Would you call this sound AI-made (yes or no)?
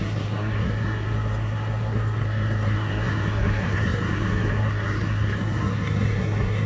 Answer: yes